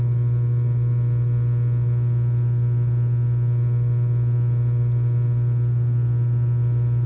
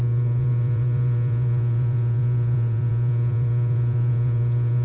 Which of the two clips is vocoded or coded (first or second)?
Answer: second